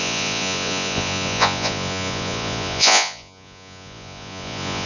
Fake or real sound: fake